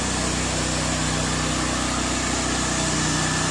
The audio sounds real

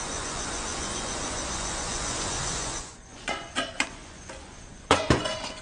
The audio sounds fake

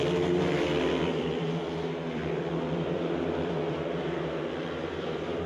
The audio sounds fake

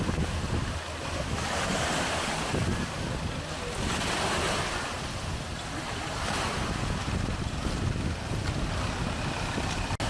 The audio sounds real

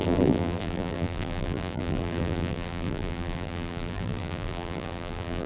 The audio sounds fake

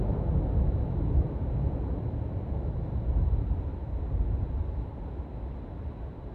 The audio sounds real